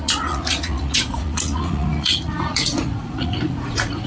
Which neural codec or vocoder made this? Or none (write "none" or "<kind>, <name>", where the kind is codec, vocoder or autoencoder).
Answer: vocoder, Vocos